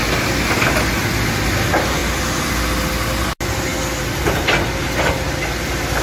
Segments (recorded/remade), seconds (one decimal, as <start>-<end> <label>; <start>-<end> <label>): 0.0-6.0 recorded